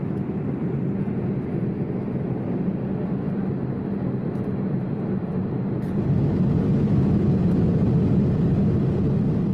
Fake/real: real